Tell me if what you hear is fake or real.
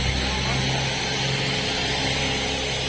real